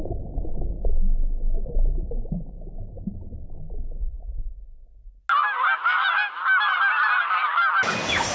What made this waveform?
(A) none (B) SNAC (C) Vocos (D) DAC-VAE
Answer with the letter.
A